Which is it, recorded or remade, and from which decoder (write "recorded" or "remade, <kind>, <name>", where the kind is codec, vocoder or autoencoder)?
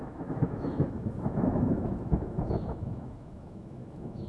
remade, autoencoder, DAC-VAE